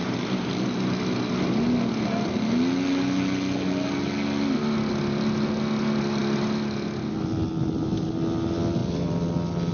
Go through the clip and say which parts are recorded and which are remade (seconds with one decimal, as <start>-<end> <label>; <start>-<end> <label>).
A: 0.0-9.7 recorded